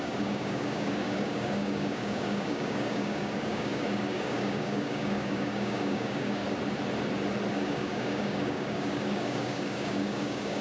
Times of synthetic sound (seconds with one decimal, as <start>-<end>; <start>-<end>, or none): 0.0-6.4; 7.5-10.6